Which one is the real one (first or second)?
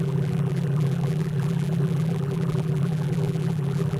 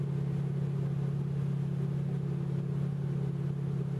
second